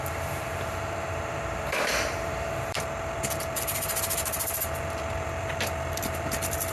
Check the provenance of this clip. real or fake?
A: fake